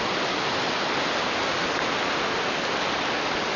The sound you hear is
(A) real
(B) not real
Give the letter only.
A